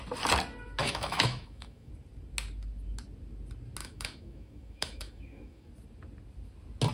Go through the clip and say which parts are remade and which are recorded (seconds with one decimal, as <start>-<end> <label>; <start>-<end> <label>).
0.0-0.8 recorded; 0.8-1.9 remade; 1.9-3.8 recorded; 3.8-5.7 remade; 5.7-6.9 recorded

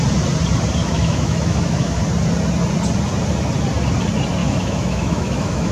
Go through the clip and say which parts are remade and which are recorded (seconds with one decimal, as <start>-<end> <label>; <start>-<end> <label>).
0.0-0.8 recorded; 0.8-2.0 remade; 2.0-4.4 recorded; 4.4-5.7 remade

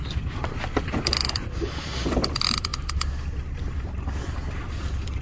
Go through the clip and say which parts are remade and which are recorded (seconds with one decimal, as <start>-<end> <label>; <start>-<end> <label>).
0.0-5.2 recorded

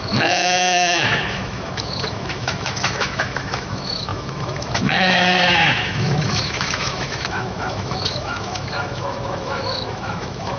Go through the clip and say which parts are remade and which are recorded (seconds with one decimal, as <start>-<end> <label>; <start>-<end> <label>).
0.0-10.6 remade